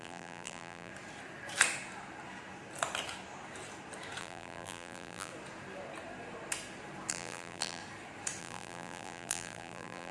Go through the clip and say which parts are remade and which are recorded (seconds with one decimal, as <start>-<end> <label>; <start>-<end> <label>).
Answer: 0.0-0.9 remade; 0.9-4.2 recorded; 4.2-5.3 remade; 5.3-7.1 recorded; 7.1-7.8 remade; 7.8-8.4 recorded; 8.4-10.1 remade